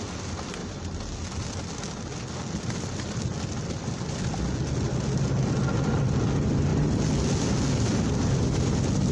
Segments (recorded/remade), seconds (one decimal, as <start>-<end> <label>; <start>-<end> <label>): 0.0-9.1 recorded